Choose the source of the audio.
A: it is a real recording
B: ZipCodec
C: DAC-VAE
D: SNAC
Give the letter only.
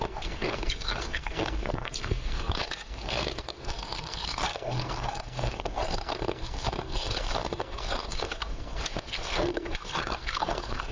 D